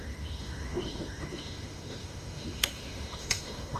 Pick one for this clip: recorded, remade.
remade